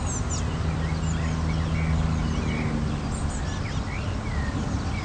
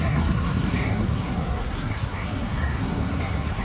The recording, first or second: first